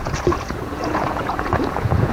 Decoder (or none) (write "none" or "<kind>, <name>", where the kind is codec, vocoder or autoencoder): vocoder, Vocos